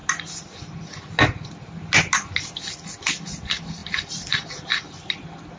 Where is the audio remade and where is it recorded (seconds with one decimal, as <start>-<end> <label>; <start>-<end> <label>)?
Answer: 0.0-5.6 recorded